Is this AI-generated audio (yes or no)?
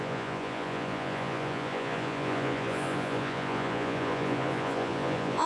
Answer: yes